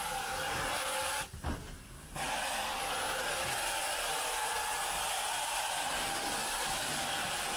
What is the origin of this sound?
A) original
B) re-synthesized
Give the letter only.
A